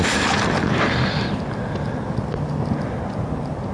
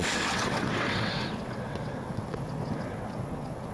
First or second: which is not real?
second